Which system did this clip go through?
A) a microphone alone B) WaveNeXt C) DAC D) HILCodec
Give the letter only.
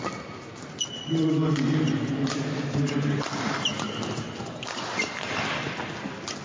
A